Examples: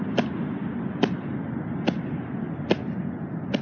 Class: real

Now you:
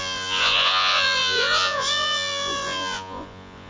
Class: fake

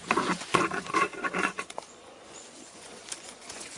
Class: fake